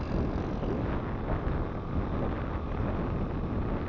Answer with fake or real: real